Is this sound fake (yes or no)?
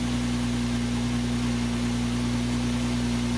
no